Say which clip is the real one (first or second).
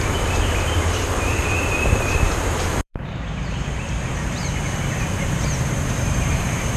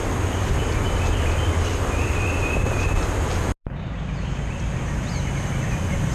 second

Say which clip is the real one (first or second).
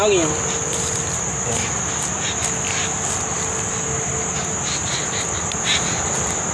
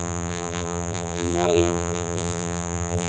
first